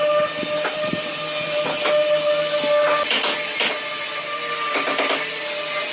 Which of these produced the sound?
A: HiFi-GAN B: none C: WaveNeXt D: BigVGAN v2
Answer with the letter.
B